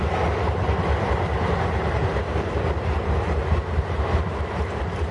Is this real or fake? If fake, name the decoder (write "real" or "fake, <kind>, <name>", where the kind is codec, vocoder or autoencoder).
fake, vocoder, BigVGAN v2